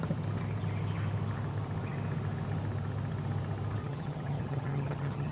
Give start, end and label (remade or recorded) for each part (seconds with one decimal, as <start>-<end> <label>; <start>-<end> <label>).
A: 0.0-3.8 recorded; 3.8-5.3 remade